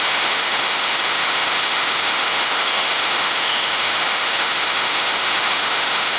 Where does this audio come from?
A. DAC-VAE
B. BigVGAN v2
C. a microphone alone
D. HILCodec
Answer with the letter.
A